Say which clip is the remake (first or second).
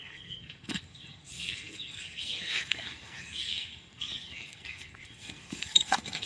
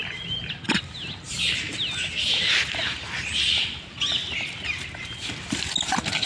first